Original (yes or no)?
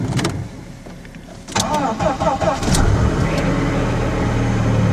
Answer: yes